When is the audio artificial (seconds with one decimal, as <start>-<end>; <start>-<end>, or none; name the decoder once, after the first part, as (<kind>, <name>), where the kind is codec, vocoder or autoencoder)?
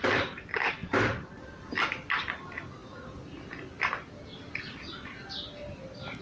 none